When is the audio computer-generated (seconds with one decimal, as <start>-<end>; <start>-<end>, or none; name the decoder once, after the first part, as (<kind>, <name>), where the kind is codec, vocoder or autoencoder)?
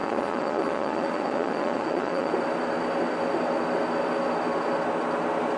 0.0-2.3 (vocoder, Vocos)